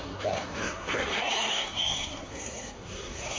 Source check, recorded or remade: remade